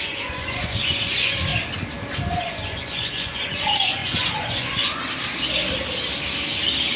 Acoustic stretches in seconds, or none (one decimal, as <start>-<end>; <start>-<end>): 1.5-2.3; 5.0-7.0